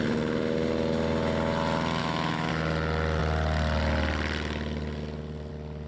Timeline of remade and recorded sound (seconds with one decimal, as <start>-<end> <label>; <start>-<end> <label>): 0.0-2.0 recorded; 2.0-2.5 remade; 2.5-5.9 recorded